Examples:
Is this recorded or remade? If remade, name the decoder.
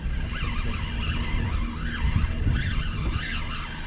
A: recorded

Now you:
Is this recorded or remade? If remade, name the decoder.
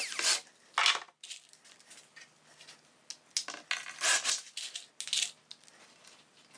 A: recorded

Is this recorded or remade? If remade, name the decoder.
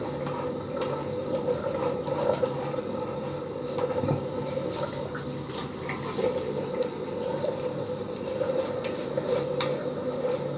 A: recorded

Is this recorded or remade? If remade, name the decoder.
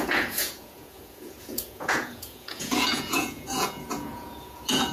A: remade, vocoder, Vocos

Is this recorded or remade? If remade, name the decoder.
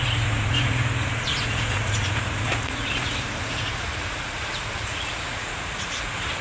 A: remade, vocoder, Vocos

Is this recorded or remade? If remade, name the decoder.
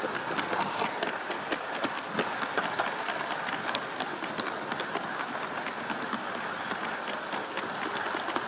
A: recorded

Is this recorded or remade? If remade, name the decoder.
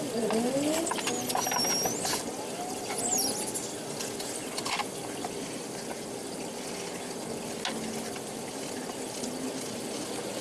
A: recorded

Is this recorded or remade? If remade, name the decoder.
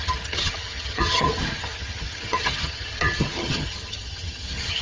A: remade, vocoder, HiFi-GAN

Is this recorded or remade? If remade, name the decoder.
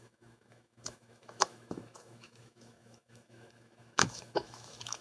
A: remade, autoencoder, DAC-VAE